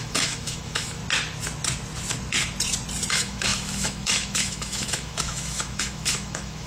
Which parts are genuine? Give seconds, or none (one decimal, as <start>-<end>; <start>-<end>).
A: 1.0-3.1